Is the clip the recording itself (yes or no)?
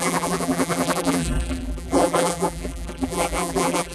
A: no